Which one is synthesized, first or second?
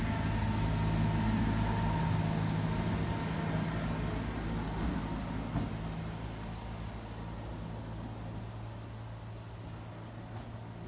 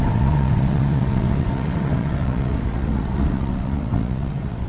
second